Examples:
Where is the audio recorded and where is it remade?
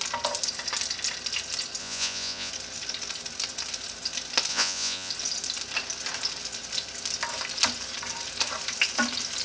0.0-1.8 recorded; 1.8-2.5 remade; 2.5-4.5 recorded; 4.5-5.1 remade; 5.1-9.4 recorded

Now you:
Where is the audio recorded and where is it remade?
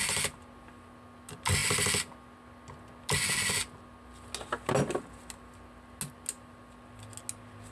0.0-7.7 recorded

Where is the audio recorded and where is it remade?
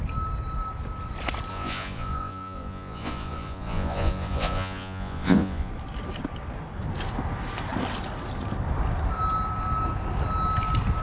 0.0-1.5 recorded; 1.5-5.7 remade; 5.7-11.0 recorded